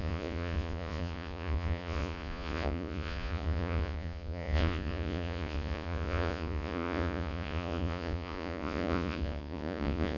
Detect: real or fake fake